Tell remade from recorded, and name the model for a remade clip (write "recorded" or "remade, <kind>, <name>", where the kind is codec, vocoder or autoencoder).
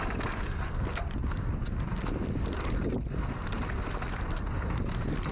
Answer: recorded